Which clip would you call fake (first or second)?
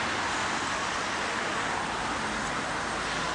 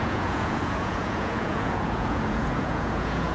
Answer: second